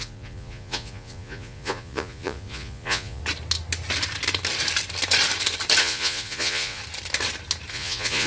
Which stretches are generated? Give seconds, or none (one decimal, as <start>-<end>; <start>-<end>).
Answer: 0.0-3.2; 5.8-6.8; 7.7-8.3